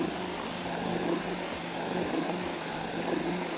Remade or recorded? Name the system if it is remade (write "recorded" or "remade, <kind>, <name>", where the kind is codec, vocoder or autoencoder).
recorded